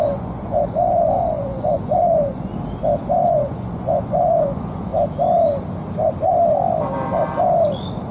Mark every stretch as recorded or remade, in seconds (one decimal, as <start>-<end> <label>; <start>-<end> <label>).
0.0-2.5 remade; 2.5-3.3 recorded; 3.3-4.9 remade; 4.9-8.1 recorded